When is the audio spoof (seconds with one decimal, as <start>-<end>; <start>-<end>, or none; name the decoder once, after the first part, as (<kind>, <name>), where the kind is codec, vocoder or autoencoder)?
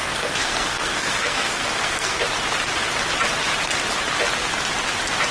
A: 0.0-2.2 (codec, SNAC)